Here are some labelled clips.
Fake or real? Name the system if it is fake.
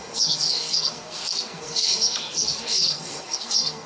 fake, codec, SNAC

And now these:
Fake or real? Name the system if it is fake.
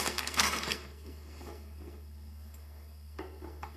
fake, codec, SNAC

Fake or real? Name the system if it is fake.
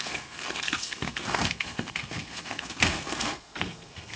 fake, codec, SNAC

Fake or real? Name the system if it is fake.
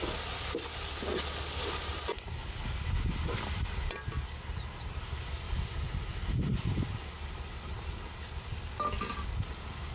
real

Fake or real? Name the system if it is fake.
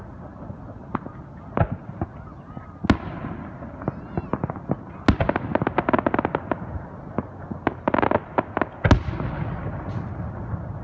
real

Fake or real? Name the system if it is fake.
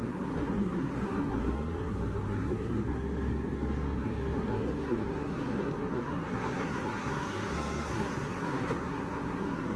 fake, codec, SNAC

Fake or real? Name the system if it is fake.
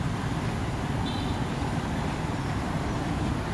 real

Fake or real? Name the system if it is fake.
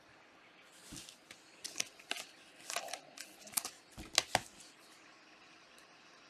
real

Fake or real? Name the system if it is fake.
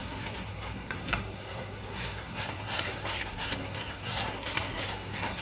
fake, codec, SNAC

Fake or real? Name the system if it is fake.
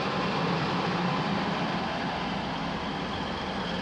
real